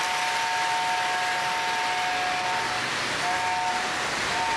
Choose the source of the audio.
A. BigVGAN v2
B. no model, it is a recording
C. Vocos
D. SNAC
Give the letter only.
B